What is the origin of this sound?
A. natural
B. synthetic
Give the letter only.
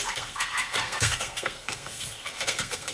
B